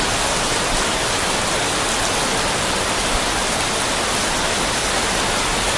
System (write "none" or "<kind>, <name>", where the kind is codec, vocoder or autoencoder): none